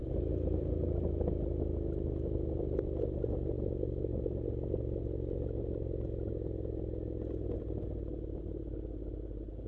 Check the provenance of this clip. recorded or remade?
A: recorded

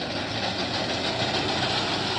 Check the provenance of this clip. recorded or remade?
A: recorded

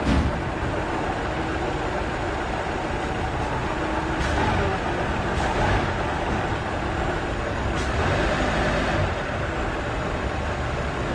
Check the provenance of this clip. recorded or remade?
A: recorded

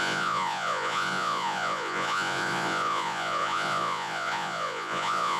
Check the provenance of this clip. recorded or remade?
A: remade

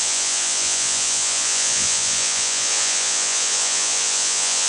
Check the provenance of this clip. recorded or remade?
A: remade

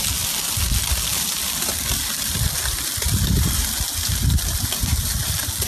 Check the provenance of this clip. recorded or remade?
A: recorded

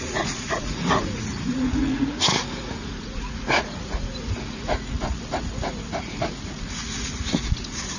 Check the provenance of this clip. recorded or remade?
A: remade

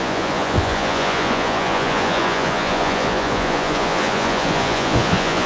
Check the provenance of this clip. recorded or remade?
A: remade